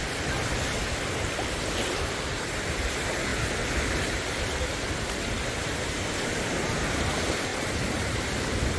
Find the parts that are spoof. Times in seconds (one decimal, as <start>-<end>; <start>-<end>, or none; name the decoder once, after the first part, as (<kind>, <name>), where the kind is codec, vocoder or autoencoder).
1.1-3.3 (vocoder, BigVGAN v2); 5.6-7.5